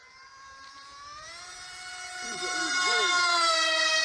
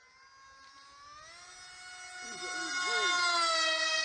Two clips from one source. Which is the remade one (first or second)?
first